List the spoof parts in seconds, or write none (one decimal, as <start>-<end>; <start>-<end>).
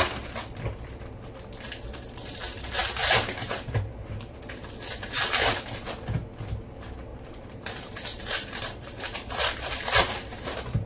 3.0-4.4; 7.1-10.9